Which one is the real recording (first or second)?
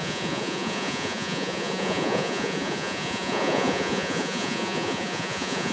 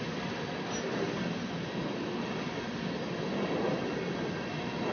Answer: second